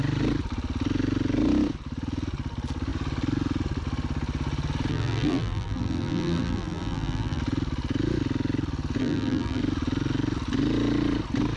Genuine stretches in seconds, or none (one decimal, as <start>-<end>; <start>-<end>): 0.0-4.9; 7.4-9.0; 9.6-11.6